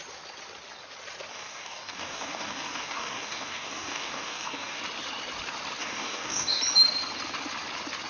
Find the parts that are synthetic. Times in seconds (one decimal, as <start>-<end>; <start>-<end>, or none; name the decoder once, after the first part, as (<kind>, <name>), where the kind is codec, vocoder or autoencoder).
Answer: 1.3-4.8 (codec, DAC); 5.8-6.6